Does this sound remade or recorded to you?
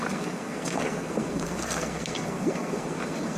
remade